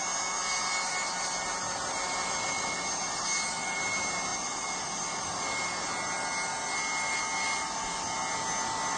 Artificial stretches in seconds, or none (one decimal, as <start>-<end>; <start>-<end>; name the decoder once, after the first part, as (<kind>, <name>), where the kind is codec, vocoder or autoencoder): none